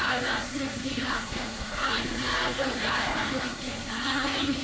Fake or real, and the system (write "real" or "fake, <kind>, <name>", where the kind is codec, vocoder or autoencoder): fake, codec, SNAC